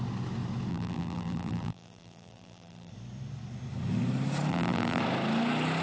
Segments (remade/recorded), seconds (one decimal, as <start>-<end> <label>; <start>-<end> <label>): 0.0-0.7 recorded; 0.7-2.9 remade; 2.9-4.5 recorded; 4.5-5.0 remade; 5.0-5.8 recorded